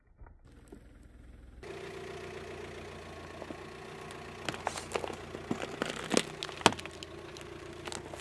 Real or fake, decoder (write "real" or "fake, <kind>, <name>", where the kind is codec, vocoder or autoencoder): real